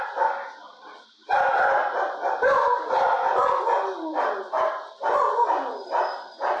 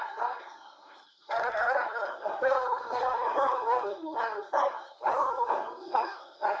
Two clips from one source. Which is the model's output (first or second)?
second